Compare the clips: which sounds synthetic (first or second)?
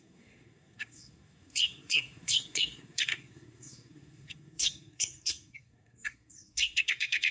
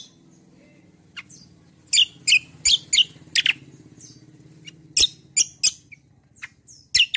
first